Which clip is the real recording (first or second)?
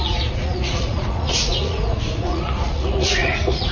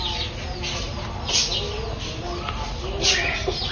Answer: second